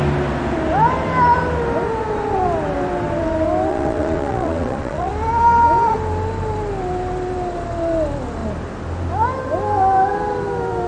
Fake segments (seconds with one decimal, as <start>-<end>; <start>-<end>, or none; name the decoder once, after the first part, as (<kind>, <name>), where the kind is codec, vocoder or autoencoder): 3.7-5.1 (vocoder, Vocos)